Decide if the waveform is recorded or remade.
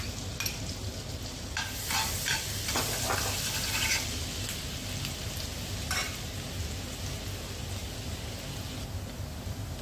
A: recorded